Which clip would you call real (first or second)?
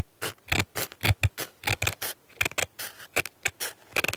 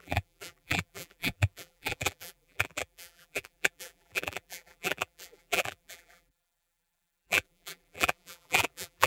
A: first